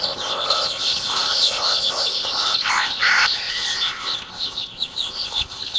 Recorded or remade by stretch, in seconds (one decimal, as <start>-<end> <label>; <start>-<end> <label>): 0.0-5.8 remade